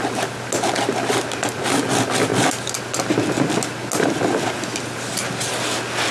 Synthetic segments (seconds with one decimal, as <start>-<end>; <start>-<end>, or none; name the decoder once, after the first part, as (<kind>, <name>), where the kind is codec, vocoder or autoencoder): none

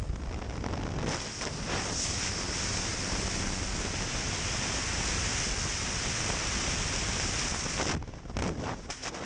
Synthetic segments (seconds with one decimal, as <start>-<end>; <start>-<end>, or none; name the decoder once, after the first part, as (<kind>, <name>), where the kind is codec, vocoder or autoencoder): none

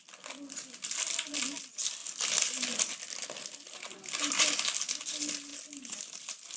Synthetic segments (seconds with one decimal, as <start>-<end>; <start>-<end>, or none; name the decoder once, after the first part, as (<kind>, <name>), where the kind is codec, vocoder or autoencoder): none

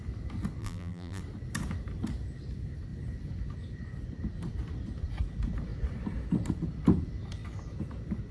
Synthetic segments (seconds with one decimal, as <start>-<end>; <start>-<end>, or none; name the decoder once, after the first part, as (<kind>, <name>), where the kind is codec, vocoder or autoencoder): 0.6-1.2 (vocoder, BigVGAN v2)

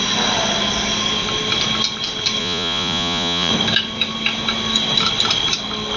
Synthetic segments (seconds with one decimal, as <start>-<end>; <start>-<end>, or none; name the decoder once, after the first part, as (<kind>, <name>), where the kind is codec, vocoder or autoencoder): 2.4-3.5 (vocoder, Vocos)